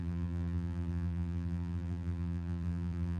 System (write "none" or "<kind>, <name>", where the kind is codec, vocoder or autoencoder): vocoder, BigVGAN v2